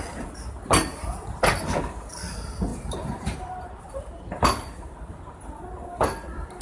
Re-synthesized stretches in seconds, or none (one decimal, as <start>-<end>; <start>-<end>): 2.7-3.8